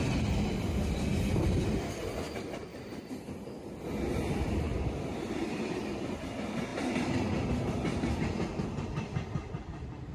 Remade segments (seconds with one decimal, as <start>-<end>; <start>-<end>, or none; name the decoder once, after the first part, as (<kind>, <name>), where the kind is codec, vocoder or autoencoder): 2.7-3.2 (vocoder, BigVGAN v2)